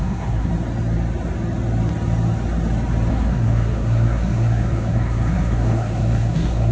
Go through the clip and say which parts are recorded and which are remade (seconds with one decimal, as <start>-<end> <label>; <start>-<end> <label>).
0.0-0.5 remade; 0.5-3.1 recorded; 3.1-6.7 remade